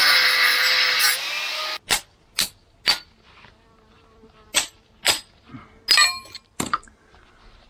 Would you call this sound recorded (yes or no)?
yes